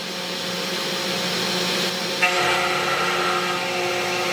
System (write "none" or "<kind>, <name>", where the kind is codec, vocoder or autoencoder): none